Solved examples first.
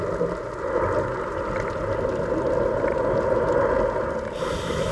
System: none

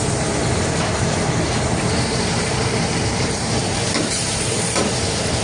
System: vocoder, BigVGAN v2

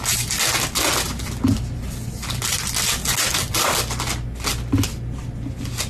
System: none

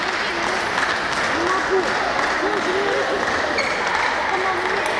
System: none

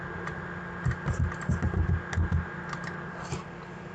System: none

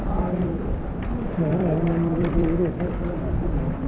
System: vocoder, BigVGAN v2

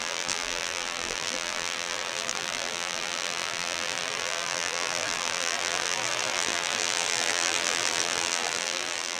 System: vocoder, BigVGAN v2